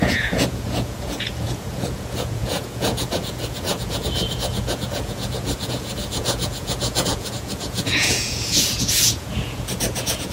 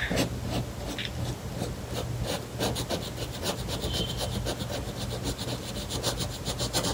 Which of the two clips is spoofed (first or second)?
first